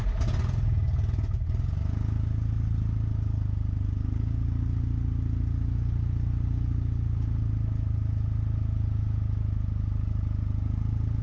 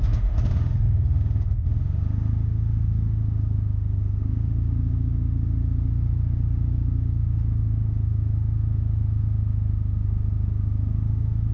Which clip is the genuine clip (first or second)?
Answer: first